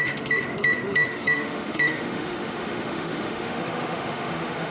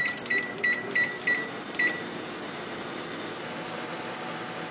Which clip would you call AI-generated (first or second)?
first